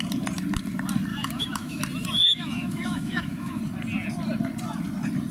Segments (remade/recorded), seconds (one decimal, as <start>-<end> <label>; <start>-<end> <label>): 0.0-1.1 recorded; 1.1-1.8 remade; 1.8-2.2 recorded; 2.2-3.6 remade; 3.6-5.3 recorded